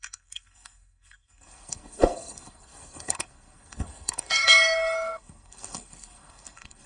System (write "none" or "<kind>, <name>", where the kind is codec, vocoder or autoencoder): codec, SNAC